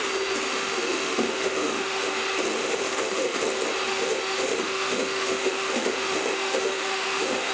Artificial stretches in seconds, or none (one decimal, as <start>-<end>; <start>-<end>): 0.5-2.1; 2.6-3.4; 3.9-7.5